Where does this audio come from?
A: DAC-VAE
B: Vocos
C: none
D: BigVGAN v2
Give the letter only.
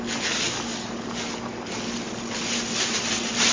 C